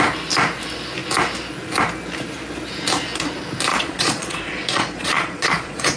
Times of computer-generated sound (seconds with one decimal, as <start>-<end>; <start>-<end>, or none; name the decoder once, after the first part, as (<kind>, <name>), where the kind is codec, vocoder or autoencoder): 3.7-6.0 (vocoder, Vocos)